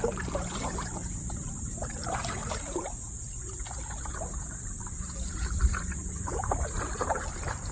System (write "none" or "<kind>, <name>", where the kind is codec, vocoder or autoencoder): vocoder, BigVGAN v2